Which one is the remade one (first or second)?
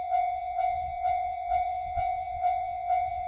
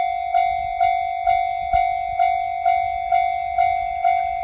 first